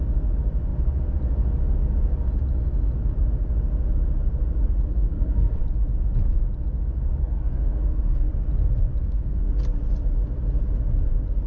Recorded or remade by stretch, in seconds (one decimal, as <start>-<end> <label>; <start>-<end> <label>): 0.0-4.9 recorded; 4.9-5.6 remade; 5.6-7.2 recorded; 7.2-8.3 remade; 8.3-9.0 recorded; 9.0-9.5 remade; 9.5-11.5 recorded